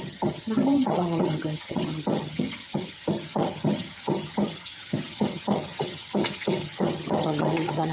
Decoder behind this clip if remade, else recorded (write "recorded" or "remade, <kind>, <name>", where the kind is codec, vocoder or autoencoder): remade, vocoder, HiFi-GAN